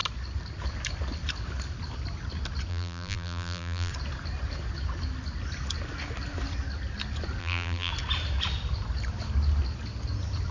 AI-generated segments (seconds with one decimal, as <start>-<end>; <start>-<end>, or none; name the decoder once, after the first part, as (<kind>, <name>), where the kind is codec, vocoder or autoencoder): 2.7-3.9 (vocoder, BigVGAN v2); 7.4-7.9